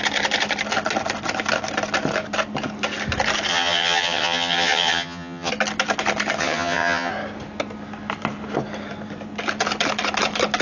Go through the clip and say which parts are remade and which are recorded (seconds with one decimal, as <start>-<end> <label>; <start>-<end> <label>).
0.0-3.5 recorded; 3.5-5.5 remade; 5.5-6.4 recorded; 6.4-7.1 remade; 7.1-10.6 recorded